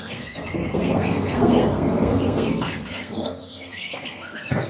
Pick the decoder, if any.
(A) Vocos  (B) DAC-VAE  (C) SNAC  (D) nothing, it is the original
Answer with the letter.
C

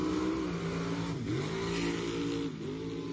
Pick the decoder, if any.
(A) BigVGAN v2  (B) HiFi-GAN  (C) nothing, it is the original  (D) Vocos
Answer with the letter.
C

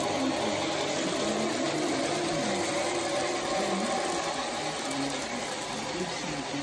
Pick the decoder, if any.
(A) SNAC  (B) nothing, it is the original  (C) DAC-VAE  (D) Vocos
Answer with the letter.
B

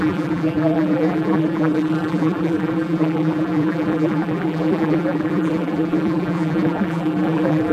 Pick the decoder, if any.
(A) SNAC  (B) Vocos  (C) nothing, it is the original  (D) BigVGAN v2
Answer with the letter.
D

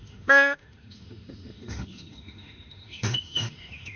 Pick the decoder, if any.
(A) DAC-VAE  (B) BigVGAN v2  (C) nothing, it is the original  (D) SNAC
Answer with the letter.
A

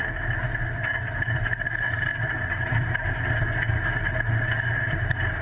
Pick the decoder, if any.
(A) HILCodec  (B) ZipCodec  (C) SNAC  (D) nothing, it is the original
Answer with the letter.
D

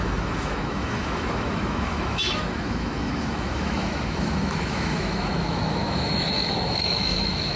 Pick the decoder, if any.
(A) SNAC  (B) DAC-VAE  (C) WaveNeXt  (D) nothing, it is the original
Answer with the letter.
B